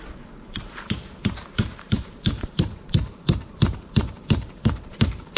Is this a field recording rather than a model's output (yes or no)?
no